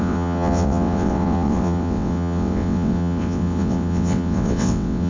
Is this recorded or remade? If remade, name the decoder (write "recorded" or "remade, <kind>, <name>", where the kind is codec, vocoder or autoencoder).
remade, vocoder, WaveNeXt